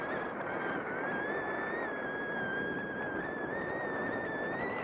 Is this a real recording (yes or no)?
yes